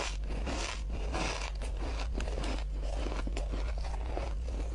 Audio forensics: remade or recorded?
recorded